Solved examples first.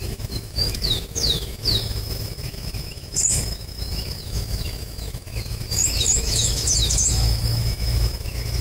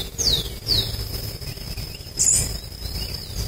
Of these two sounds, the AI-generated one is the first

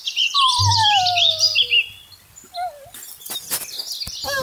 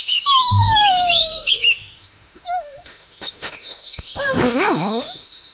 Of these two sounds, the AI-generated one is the second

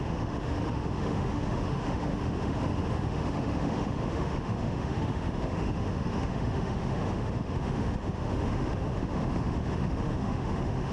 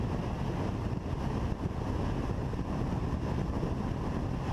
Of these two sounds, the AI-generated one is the first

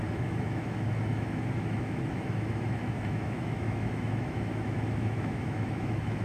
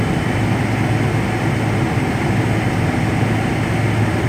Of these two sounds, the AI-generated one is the first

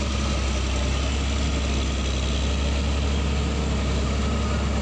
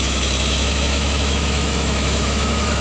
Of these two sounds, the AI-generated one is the second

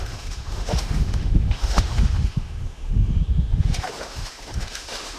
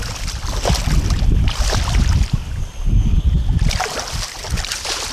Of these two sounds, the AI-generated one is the first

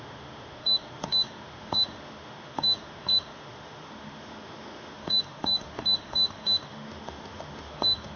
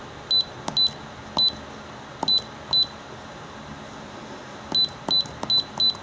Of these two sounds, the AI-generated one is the first